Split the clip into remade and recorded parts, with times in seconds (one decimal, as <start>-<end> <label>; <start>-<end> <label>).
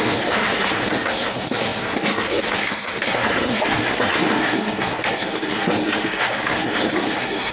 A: 0.0-7.5 remade